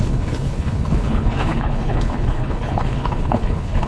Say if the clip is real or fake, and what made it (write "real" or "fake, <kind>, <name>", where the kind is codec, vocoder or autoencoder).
fake, codec, HILCodec